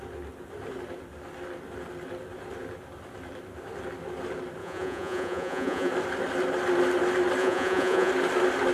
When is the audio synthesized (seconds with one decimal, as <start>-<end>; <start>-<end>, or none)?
4.6-5.9; 7.4-8.1